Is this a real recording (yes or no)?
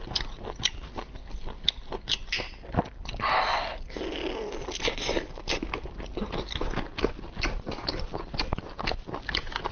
yes